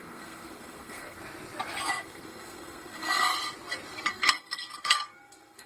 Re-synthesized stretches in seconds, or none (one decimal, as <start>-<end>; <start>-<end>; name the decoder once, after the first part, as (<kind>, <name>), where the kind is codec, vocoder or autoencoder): 0.0-1.2 (codec, SNAC); 1.9-3.3; 4.1-5.7